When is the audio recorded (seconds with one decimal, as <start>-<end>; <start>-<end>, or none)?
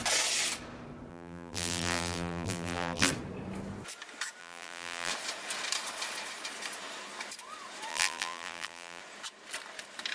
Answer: 0.0-1.1; 3.1-4.4; 5.1-7.9; 9.0-10.1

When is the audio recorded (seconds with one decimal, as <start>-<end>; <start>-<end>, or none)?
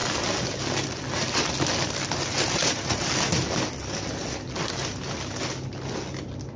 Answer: 0.0-6.6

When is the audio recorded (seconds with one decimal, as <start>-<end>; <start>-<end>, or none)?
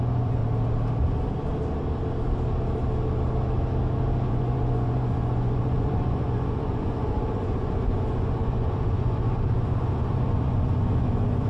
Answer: 0.4-4.3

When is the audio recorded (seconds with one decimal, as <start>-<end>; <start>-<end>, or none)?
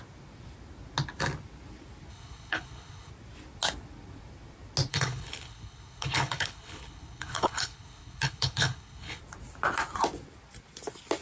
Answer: 0.0-2.1; 3.1-4.9; 9.2-11.2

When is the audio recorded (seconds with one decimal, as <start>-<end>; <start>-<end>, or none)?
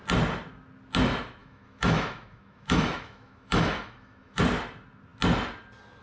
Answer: 0.0-1.4; 4.4-6.0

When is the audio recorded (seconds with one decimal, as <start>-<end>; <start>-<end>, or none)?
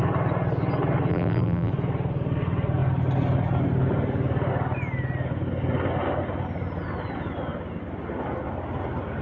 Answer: 0.0-1.1; 1.7-9.2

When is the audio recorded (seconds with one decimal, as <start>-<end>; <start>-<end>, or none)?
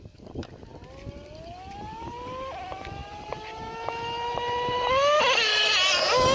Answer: 0.0-6.3